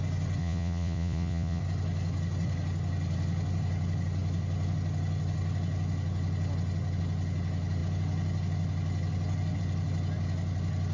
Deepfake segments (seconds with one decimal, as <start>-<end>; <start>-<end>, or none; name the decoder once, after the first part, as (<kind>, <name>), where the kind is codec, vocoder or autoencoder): 0.4-1.6 (vocoder, Vocos)